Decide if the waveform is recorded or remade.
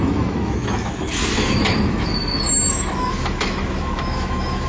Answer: remade